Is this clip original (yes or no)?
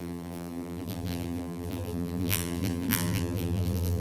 no